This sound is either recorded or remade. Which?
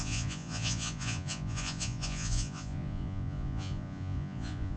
remade